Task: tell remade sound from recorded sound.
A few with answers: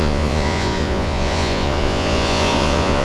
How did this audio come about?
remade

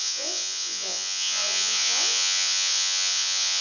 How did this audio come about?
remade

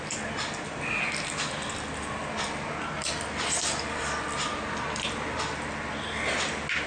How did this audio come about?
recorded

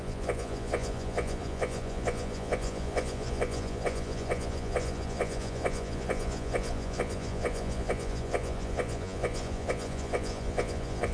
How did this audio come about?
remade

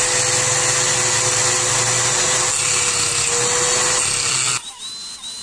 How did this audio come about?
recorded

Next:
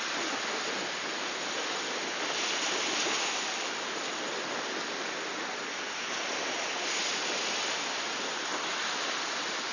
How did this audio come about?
recorded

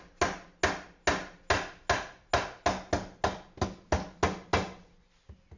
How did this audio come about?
recorded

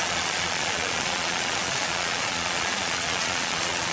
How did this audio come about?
remade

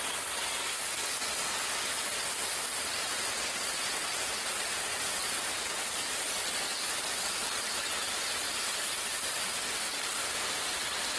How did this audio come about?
recorded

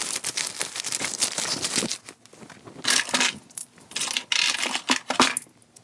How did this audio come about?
recorded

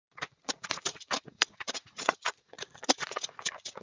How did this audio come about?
remade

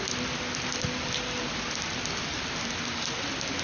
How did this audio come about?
recorded